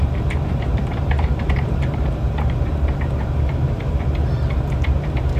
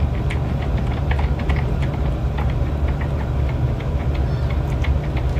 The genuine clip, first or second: second